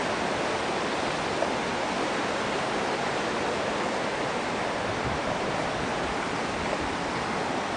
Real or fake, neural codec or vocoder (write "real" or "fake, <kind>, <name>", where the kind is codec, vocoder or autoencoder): real